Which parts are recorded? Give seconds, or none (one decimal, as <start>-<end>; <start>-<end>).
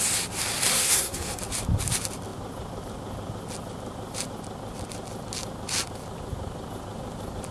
0.0-0.7; 1.4-7.5